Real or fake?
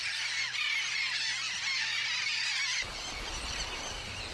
real